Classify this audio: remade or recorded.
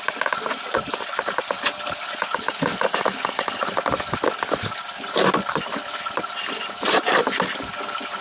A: recorded